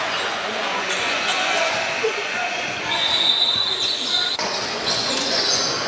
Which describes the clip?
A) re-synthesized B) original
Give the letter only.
A